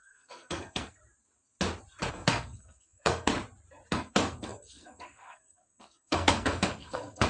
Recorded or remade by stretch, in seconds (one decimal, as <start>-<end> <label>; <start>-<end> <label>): 0.0-1.0 remade; 1.0-2.1 recorded; 2.1-3.3 remade; 3.3-3.9 recorded; 3.9-7.3 remade